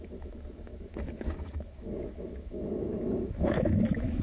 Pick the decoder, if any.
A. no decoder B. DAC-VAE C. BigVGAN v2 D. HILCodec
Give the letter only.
B